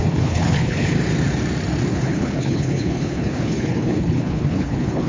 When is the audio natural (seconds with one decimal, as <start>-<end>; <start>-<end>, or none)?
0.9-1.9